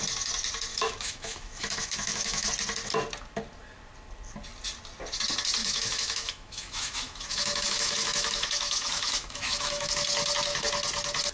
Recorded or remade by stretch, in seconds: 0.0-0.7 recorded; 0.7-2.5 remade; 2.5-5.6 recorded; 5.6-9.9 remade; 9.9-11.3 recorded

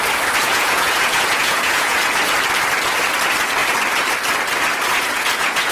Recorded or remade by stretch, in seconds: 0.0-0.4 recorded; 0.4-2.1 remade; 2.1-4.9 recorded; 4.9-5.7 remade

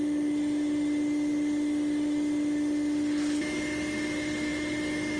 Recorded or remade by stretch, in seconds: 0.0-5.2 recorded

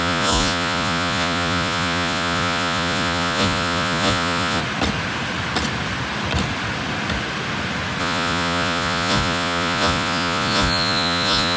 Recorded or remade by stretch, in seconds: 0.0-4.6 remade; 4.6-8.0 recorded; 8.0-11.6 remade

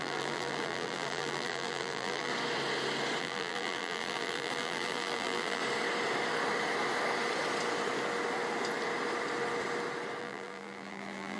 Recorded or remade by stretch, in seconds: 0.0-2.3 remade; 2.3-3.2 recorded; 3.2-5.6 remade; 5.6-10.2 recorded; 10.2-11.4 remade

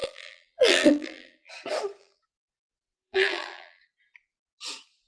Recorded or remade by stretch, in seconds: 0.0-1.5 remade; 1.5-2.0 recorded; 2.0-3.8 remade; 3.8-5.1 recorded